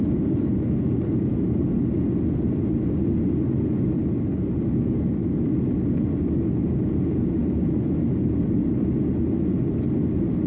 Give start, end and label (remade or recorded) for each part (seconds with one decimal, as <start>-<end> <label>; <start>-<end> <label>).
0.0-10.5 recorded